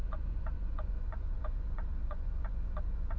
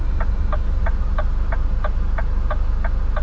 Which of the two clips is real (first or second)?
second